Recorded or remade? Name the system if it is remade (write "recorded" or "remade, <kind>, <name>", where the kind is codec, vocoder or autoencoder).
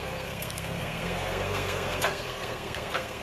remade, codec, SNAC